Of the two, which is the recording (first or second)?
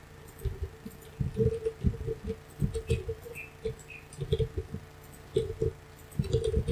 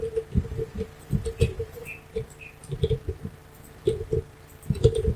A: first